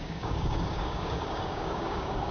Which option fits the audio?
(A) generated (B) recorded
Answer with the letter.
A